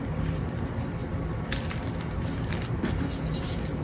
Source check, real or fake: fake